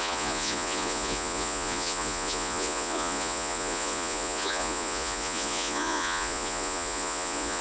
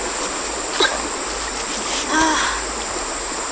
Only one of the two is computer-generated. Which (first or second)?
first